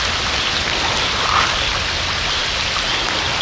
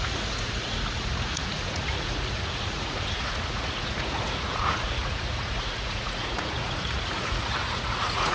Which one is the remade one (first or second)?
second